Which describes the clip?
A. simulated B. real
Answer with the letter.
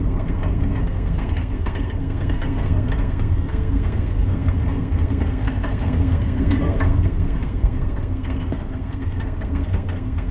A